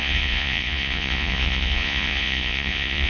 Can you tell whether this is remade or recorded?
remade